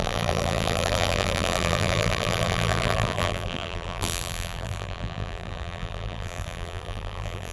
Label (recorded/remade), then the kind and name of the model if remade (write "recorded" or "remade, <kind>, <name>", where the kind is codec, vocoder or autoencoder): remade, vocoder, BigVGAN v2